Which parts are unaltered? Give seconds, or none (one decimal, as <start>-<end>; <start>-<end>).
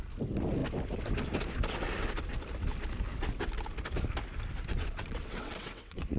0.0-4.7